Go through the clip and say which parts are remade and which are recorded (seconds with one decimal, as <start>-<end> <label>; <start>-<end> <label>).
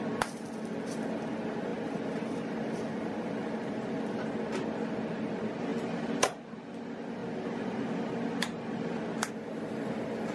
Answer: 0.0-10.3 recorded